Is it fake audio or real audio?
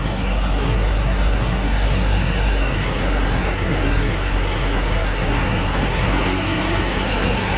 fake